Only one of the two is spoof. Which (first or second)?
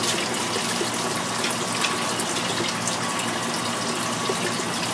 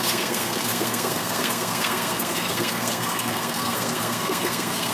second